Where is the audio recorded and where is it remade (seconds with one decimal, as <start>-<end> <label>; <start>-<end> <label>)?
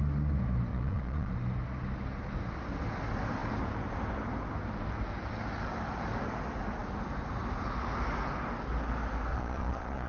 0.0-0.7 recorded; 0.7-1.3 remade; 1.3-9.3 recorded; 9.3-10.1 remade